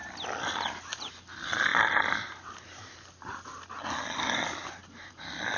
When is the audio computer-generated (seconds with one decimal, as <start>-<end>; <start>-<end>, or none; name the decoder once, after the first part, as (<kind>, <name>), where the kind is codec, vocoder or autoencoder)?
none